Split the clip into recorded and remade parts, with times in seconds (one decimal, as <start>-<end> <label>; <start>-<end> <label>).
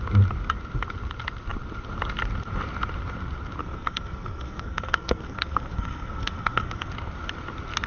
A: 0.0-3.6 recorded; 3.6-6.9 remade; 6.9-7.9 recorded